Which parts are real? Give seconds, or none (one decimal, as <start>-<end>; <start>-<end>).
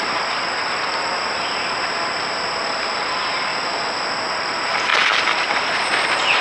1.1-3.0; 3.5-4.3